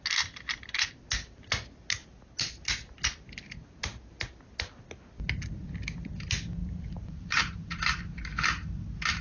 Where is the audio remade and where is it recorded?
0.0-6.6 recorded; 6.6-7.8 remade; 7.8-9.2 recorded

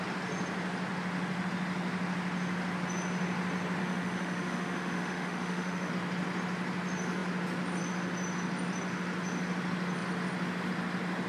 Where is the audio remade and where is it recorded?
0.0-3.8 recorded; 3.8-5.9 remade; 5.9-11.3 recorded

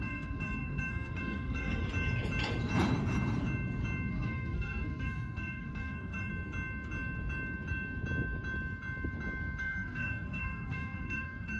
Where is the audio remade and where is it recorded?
0.0-1.8 remade; 1.8-4.1 recorded; 4.1-6.3 remade; 6.3-9.6 recorded; 9.6-11.6 remade